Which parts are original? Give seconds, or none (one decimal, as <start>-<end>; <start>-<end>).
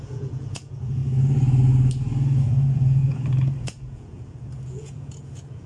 1.0-2.4; 3.0-3.6